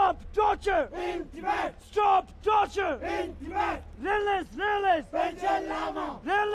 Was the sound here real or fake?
real